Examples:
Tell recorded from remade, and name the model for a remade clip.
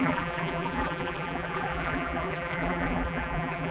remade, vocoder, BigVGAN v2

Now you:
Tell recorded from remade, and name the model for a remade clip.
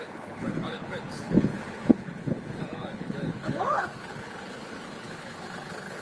remade, codec, HILCodec